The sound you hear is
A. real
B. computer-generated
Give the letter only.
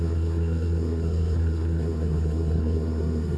B